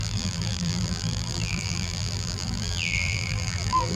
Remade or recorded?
remade